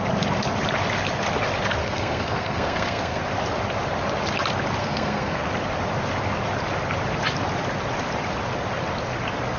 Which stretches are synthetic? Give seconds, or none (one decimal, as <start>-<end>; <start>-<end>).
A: 1.8-3.2; 4.8-5.4